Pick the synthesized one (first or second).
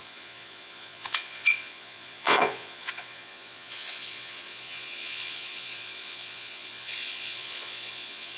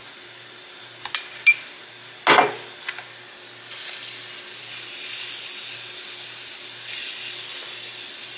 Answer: first